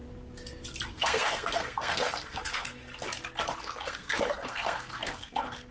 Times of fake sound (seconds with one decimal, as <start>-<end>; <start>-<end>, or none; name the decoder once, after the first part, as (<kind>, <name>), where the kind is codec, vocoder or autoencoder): 0.9-2.8 (codec, SNAC); 3.6-5.7